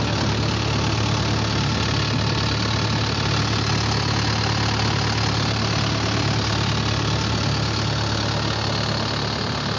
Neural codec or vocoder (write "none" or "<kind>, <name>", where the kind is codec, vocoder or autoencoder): none